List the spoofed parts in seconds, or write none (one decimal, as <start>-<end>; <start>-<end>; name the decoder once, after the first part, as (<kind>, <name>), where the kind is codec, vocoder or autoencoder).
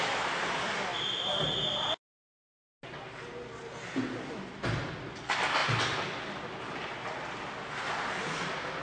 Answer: none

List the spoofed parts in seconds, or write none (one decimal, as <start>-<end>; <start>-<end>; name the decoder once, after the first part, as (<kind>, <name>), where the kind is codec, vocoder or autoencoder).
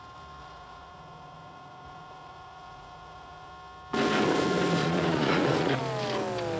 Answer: 0.4-3.5 (vocoder, Vocos); 4.8-5.8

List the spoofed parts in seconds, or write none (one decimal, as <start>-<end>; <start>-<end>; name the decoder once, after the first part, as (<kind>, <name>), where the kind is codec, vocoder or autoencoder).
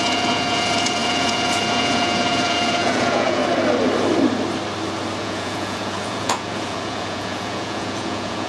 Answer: 0.0-3.4 (vocoder, Vocos); 5.2-8.5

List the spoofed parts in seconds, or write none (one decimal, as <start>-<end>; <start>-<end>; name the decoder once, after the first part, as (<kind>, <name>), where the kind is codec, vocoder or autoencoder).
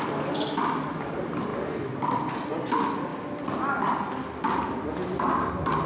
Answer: none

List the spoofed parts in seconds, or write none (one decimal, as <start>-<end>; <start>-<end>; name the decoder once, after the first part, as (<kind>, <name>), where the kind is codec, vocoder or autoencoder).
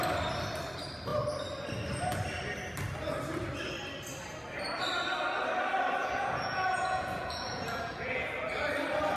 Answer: 6.0-8.3 (vocoder, Vocos)